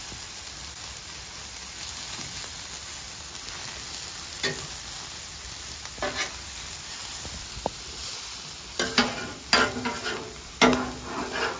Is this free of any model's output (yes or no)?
yes